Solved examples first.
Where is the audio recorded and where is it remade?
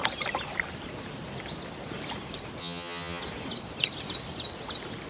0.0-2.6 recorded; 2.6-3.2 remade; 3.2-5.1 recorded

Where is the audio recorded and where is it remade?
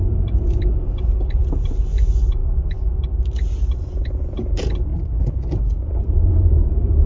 0.0-2.4 remade; 2.4-4.2 recorded; 4.2-4.9 remade; 4.9-6.1 recorded; 6.1-7.1 remade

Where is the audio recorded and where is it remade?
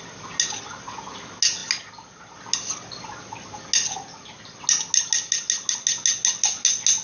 0.0-7.0 recorded